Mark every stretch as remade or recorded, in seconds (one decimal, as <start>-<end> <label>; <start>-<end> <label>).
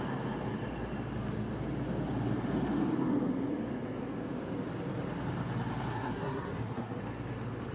0.0-5.9 recorded; 5.9-7.0 remade; 7.0-7.7 recorded